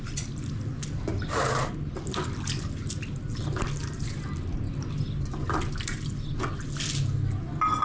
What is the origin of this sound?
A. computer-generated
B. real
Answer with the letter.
B